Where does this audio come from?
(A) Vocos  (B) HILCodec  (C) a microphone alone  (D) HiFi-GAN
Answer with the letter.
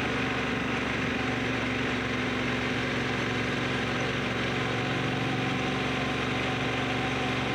C